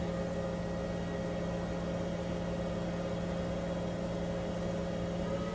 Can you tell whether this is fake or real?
real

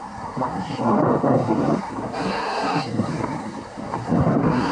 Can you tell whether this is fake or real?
fake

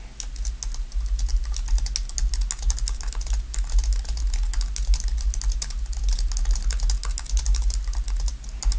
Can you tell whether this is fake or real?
real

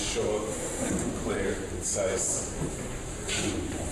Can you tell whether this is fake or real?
fake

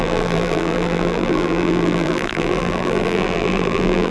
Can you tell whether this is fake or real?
fake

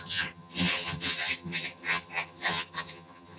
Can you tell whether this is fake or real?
fake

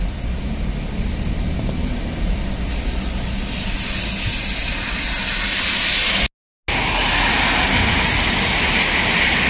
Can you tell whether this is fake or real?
real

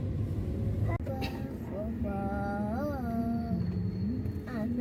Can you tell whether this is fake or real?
real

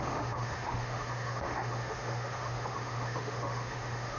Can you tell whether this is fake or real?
fake